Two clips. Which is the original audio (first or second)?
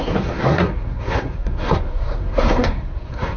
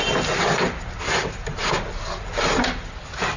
second